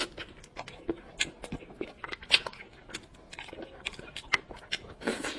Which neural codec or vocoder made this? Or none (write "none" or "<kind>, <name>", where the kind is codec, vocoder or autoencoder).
none